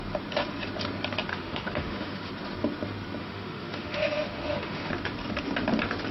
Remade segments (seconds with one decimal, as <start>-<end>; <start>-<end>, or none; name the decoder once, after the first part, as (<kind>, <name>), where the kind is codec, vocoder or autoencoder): 1.3-2.3 (autoencoder, DAC-VAE); 3.2-4.9